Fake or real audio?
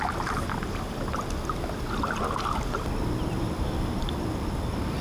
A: real